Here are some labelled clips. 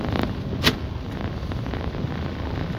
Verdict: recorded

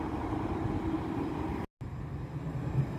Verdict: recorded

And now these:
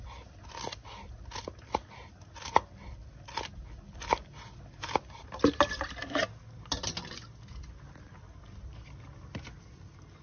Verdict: recorded